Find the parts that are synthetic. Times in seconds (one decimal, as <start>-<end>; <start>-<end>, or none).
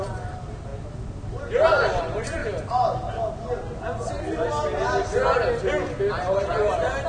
0.0-0.7; 2.0-2.4; 6.1-7.1